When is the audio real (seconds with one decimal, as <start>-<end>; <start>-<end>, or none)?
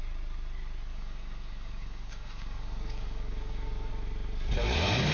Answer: 0.0-0.9; 3.9-5.1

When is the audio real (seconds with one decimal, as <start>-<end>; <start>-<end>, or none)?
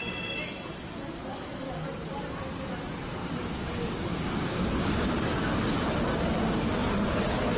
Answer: 0.0-3.2; 5.6-7.6